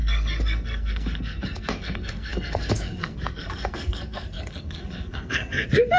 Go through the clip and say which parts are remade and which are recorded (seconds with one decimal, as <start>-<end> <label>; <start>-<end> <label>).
0.0-6.0 remade